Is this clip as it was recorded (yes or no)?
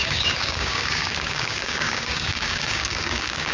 no